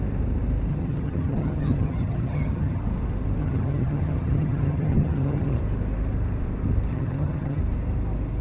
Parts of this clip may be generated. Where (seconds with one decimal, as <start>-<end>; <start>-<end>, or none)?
0.7-2.8; 3.4-5.6; 6.9-7.6